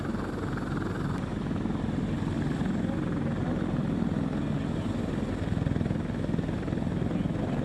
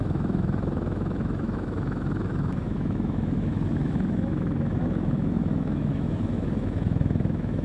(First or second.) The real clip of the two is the first